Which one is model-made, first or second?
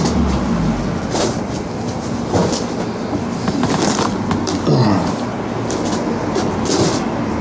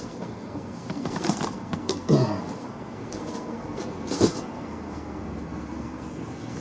second